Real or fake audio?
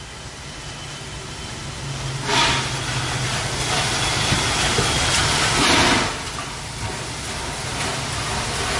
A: real